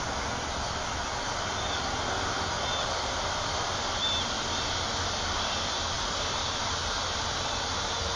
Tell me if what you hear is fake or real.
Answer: real